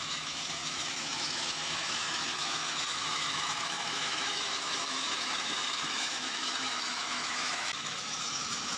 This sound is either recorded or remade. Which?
remade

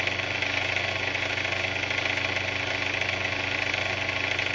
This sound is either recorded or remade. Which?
recorded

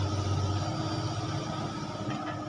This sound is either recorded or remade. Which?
recorded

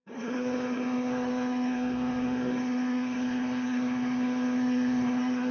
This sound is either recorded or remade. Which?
remade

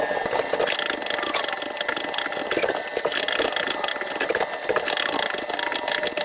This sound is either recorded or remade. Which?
recorded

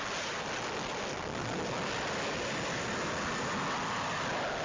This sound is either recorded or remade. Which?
recorded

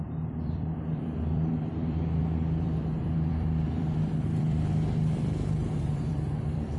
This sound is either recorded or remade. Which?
remade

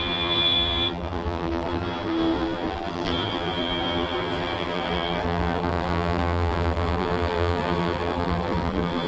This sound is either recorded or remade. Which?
remade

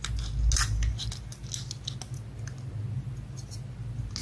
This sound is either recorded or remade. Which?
recorded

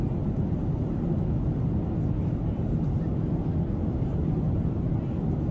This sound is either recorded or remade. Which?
recorded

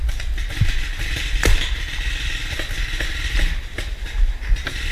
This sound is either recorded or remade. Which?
recorded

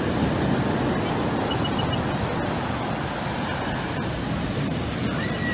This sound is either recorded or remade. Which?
recorded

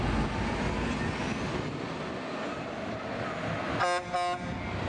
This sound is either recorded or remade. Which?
recorded